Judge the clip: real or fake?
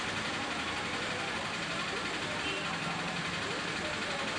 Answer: real